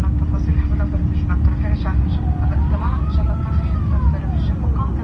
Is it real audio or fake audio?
real